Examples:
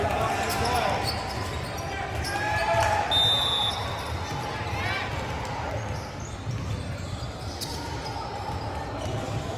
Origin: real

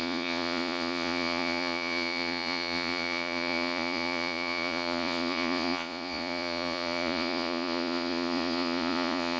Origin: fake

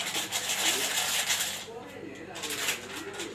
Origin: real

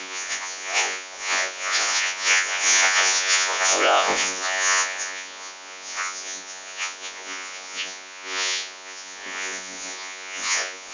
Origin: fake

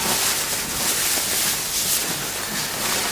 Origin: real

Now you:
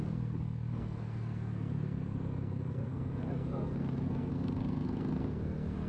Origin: fake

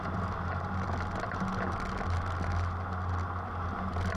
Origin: real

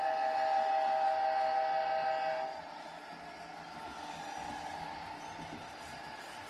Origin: real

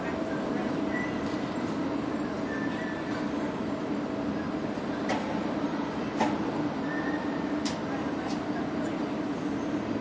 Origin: real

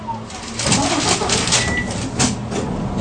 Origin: real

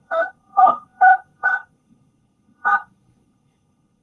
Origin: fake